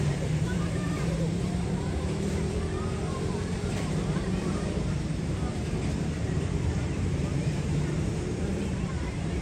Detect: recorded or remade remade